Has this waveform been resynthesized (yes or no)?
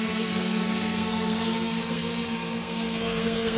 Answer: yes